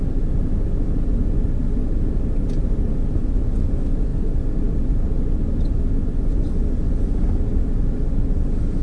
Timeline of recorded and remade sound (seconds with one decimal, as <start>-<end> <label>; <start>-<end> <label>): 0.0-8.8 recorded